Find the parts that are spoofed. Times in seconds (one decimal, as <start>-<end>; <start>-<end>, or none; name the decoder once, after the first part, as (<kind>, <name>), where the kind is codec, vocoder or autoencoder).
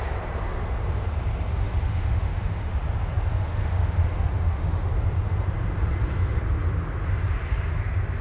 1.5-2.7 (autoencoder, DAC-VAE); 3.3-4.9